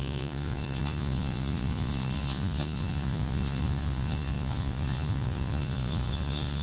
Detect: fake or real fake